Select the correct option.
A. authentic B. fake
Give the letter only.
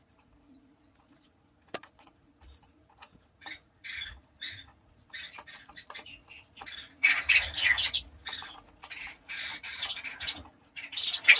B